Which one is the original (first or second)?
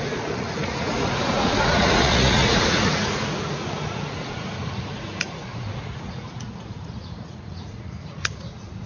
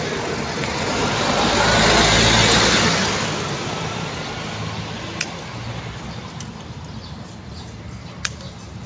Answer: second